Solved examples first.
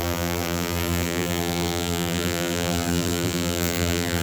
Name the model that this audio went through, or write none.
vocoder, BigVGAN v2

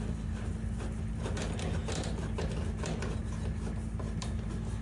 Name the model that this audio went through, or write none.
none